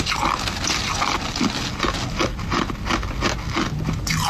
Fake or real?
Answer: real